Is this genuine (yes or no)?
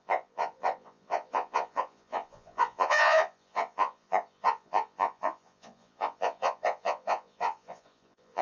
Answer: no